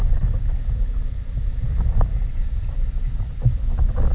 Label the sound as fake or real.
real